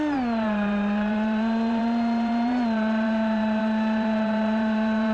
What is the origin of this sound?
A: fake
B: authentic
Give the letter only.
A